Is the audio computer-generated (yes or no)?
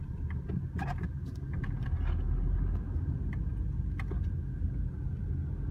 no